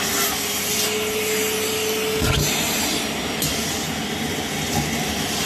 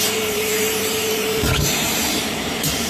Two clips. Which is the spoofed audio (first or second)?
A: second